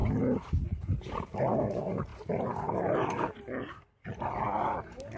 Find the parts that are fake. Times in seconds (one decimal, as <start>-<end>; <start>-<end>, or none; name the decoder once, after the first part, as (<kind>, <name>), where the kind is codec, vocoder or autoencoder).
0.0-1.4 (vocoder, BigVGAN v2); 2.1-3.3